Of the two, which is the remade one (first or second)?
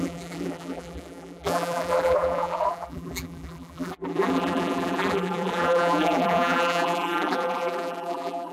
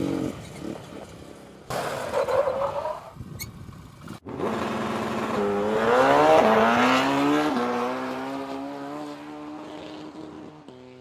first